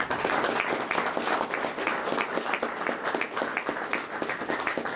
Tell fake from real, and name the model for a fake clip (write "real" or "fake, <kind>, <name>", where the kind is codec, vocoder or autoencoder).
real